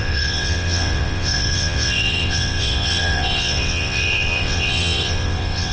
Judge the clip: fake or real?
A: fake